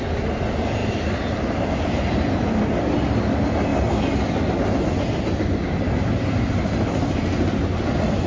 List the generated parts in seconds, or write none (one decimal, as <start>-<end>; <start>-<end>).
0.8-1.7